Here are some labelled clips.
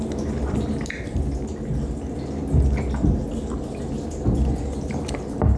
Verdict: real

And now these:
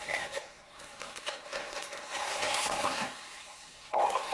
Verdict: fake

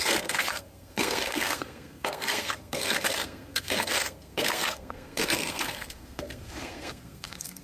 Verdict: fake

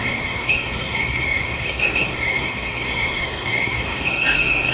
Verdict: fake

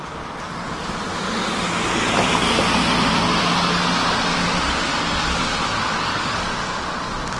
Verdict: real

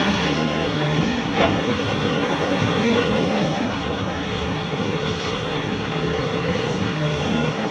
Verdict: fake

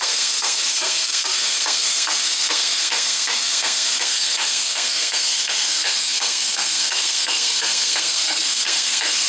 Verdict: fake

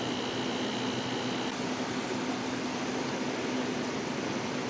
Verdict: real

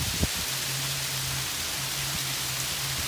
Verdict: real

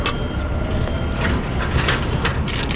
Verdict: real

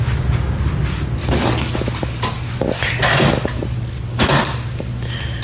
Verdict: real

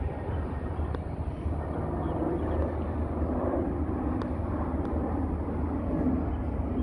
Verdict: real